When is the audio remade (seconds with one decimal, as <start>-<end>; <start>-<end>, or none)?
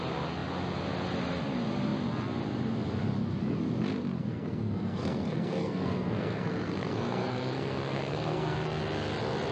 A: 4.2-8.8